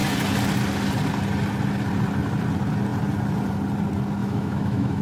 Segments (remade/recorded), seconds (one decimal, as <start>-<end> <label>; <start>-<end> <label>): 0.0-4.2 recorded; 4.2-5.0 remade